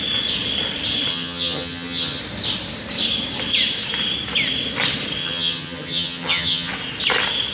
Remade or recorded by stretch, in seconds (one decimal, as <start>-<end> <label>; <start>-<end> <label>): 0.0-1.1 recorded; 1.1-2.2 remade; 2.2-5.2 recorded; 5.2-6.7 remade; 6.7-7.5 recorded